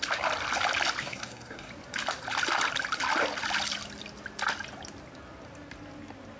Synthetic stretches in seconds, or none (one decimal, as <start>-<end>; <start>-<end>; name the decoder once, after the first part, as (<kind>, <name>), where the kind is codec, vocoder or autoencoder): 1.0-1.7 (codec, SNAC)